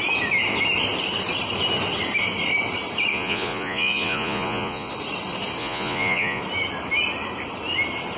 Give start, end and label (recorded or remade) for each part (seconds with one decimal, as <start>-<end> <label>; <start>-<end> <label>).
0.0-3.1 recorded; 3.1-4.9 remade; 4.9-5.6 recorded; 5.6-6.4 remade; 6.4-8.2 recorded